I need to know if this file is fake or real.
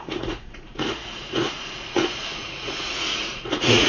fake